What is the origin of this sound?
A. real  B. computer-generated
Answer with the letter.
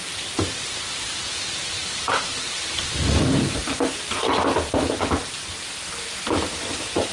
A